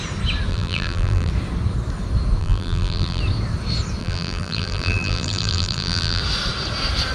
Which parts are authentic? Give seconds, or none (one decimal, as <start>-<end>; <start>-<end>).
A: 0.0-0.5; 1.3-2.4; 3.2-4.0; 6.2-7.1